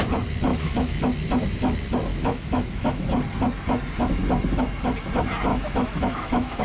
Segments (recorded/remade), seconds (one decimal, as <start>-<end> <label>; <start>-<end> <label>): 0.0-0.5 recorded; 0.5-1.0 remade; 1.0-2.1 recorded; 2.1-3.1 remade; 3.1-5.5 recorded; 5.5-6.6 remade